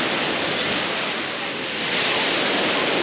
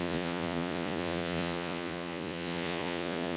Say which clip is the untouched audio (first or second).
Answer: first